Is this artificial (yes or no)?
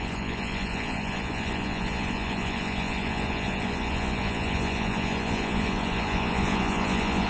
yes